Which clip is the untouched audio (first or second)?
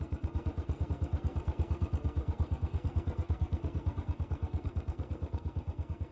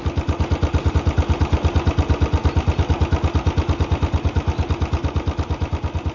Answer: second